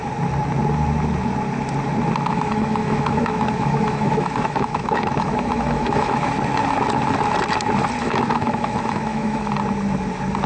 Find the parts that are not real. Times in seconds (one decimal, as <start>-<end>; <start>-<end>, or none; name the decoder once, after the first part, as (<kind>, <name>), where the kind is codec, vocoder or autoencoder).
2.3-6.3 (autoencoder, DAC-VAE); 8.0-9.5